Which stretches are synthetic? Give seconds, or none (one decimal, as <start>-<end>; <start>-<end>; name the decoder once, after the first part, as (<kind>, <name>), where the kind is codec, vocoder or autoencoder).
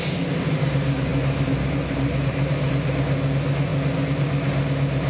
1.1-2.7 (vocoder, BigVGAN v2)